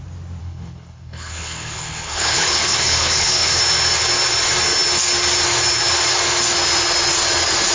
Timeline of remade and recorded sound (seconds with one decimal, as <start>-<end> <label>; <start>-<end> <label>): 0.0-0.4 recorded; 0.4-3.6 remade; 3.6-7.7 recorded